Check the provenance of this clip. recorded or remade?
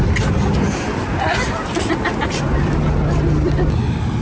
recorded